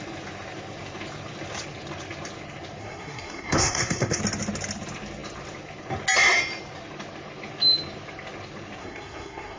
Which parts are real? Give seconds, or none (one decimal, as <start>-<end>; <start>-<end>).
0.0-2.8; 4.2-8.8